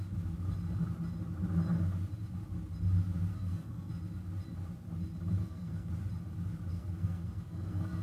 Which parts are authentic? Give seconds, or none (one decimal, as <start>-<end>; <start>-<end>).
0.0-3.3; 3.9-5.4; 5.9-6.7